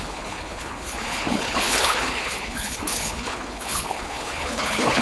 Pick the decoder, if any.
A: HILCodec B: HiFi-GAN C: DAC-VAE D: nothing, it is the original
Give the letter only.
A